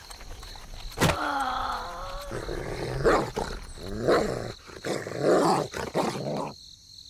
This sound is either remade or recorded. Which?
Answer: recorded